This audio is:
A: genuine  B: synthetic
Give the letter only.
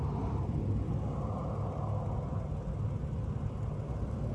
A